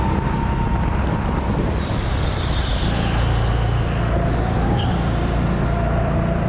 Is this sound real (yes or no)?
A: yes